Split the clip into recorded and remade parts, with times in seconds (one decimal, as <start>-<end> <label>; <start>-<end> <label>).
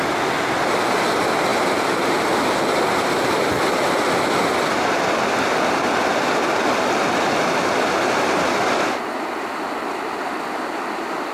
0.0-11.3 recorded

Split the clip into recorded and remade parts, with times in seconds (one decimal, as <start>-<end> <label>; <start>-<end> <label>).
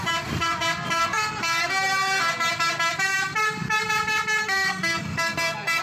0.0-1.0 recorded; 1.0-1.7 remade; 1.7-4.4 recorded; 4.4-5.8 remade